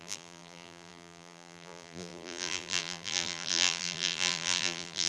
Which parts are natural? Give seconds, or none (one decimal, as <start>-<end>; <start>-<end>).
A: none